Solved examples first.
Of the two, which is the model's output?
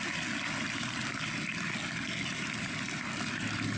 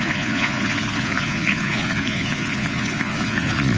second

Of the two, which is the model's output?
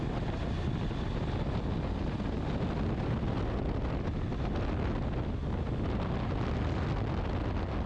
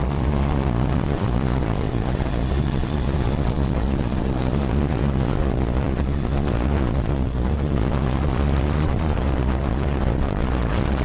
second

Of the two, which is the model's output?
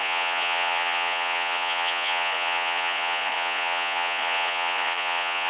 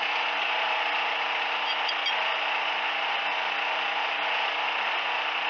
first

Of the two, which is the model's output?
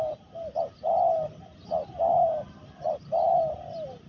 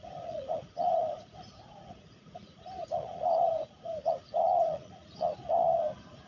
second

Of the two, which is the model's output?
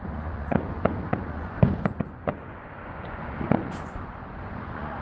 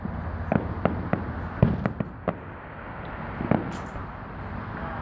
first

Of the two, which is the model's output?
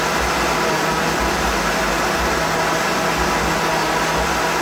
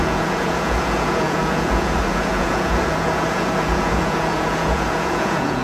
second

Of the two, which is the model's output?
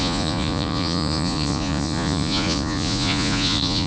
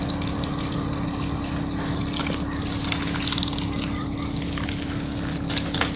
first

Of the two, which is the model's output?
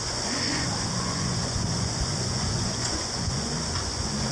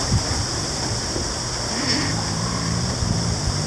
first